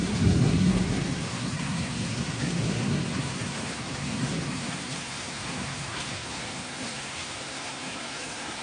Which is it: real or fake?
fake